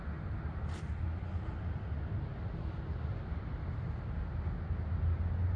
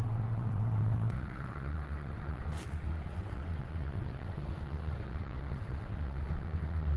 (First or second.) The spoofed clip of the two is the second